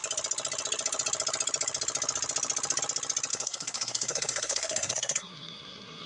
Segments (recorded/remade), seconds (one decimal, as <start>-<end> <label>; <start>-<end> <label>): 0.0-3.3 recorded; 3.3-6.1 remade